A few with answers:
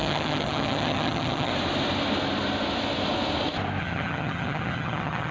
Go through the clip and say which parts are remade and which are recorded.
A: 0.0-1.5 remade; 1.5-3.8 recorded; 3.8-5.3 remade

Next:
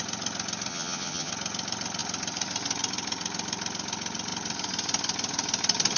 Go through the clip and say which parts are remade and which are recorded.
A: 0.0-0.7 recorded; 0.7-1.3 remade; 1.3-6.0 recorded

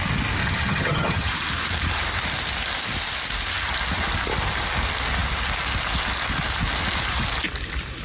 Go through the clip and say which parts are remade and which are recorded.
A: 0.0-0.4 recorded; 0.4-1.3 remade; 1.3-8.0 recorded